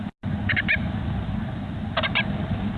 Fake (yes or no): no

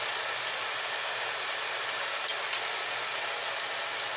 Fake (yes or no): no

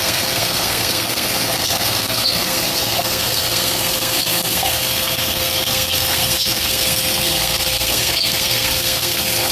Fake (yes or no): yes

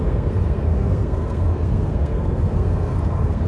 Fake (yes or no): yes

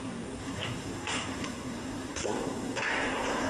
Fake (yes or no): yes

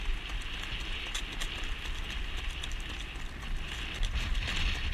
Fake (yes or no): no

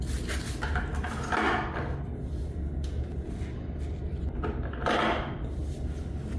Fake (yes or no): no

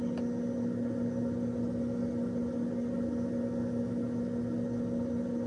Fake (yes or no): no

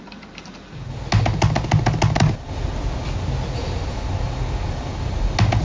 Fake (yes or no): no